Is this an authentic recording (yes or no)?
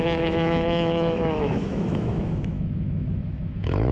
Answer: no